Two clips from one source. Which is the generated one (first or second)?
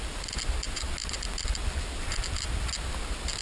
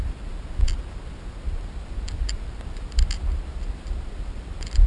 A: second